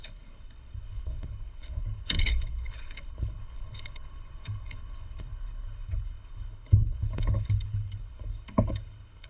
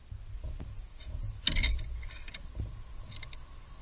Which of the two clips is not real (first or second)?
first